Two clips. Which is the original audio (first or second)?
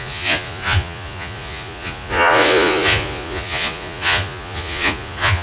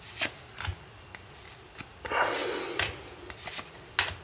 second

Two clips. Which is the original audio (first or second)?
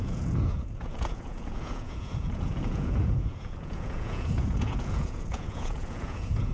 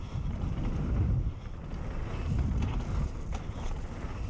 second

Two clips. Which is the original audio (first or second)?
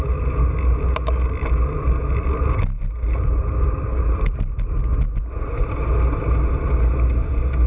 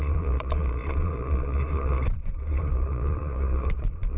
first